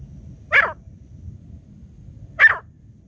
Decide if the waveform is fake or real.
fake